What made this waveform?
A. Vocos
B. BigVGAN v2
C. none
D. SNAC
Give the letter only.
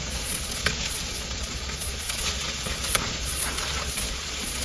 A